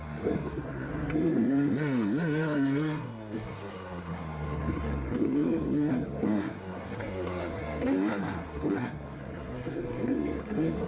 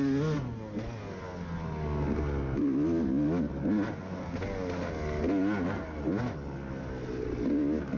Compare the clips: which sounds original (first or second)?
second